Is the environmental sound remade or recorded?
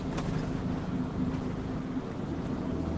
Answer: recorded